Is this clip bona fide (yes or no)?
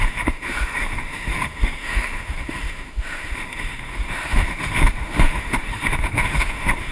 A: no